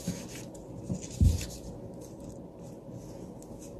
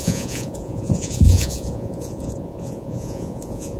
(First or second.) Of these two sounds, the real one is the first